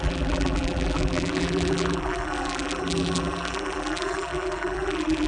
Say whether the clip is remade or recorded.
remade